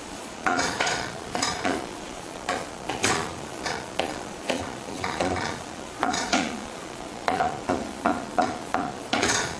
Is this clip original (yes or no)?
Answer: no